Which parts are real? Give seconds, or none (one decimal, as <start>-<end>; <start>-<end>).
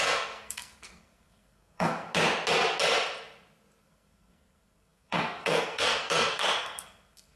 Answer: 2.1-3.8